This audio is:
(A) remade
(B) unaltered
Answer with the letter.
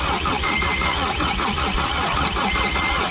A